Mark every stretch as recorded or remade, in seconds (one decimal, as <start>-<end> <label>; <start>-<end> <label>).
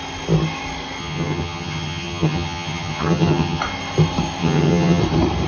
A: 0.0-1.0 recorded; 1.0-3.6 remade; 3.6-4.4 recorded; 4.4-5.0 remade; 5.0-5.5 recorded